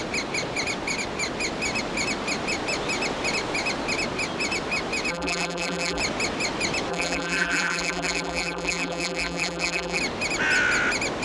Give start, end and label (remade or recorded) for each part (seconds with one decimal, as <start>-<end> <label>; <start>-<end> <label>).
0.0-5.1 recorded; 5.1-6.0 remade; 6.0-6.9 recorded; 6.9-10.0 remade; 10.0-11.2 recorded